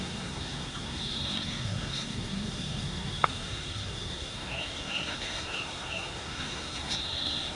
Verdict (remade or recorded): remade